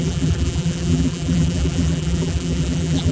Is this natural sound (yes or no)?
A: no